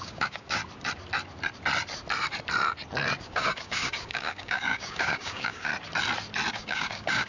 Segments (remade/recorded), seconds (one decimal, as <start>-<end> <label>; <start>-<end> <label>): 0.0-0.6 remade; 0.6-3.2 recorded; 3.2-5.7 remade; 5.7-6.5 recorded; 6.5-7.3 remade

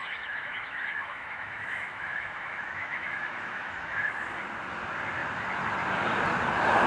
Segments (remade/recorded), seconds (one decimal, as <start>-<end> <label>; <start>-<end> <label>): 0.0-4.1 remade; 4.1-6.9 recorded

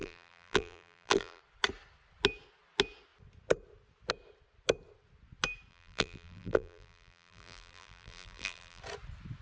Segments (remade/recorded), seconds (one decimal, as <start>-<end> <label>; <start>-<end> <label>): 0.0-1.4 remade; 1.4-5.7 recorded; 5.7-8.8 remade; 8.8-9.4 recorded